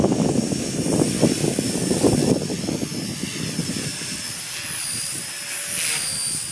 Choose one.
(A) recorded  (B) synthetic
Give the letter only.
A